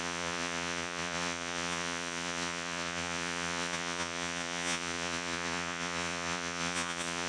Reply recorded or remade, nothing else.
remade